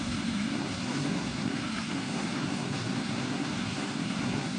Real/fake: fake